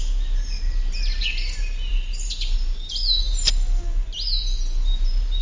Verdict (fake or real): real